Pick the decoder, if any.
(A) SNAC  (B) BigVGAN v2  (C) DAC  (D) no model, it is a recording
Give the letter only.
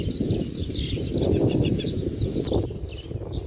D